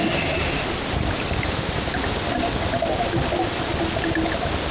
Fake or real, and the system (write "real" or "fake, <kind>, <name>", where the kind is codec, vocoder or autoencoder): real